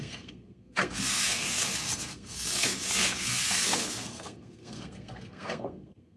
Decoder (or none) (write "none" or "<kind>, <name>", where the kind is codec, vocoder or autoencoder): codec, SNAC